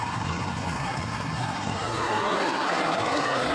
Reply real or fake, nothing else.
fake